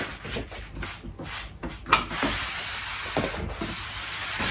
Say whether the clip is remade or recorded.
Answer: recorded